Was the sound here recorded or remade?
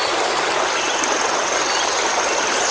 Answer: recorded